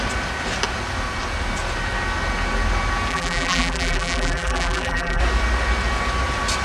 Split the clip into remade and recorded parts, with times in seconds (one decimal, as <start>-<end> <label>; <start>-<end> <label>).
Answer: 0.0-3.1 recorded; 3.1-5.2 remade; 5.2-6.6 recorded